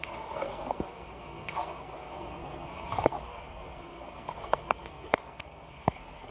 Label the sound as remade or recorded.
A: remade